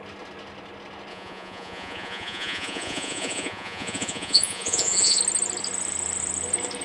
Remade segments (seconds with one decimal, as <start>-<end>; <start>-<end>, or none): 1.1-5.2